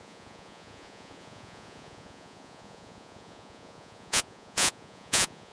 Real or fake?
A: fake